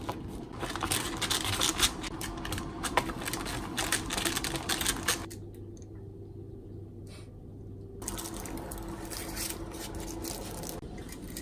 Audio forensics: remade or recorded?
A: recorded